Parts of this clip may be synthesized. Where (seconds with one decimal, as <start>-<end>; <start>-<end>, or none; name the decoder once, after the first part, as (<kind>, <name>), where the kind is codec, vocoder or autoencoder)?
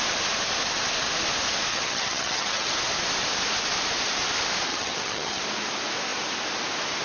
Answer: 1.7-2.7 (vocoder, HiFi-GAN); 4.7-5.4